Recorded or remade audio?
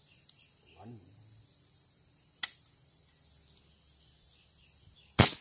recorded